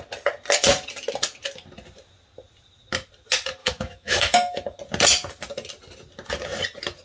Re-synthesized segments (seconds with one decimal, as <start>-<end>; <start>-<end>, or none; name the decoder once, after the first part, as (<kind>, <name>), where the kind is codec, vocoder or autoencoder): 3.6-4.8 (autoencoder, DAC-VAE)